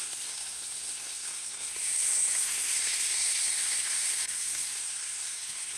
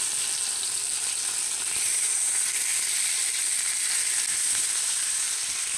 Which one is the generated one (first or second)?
first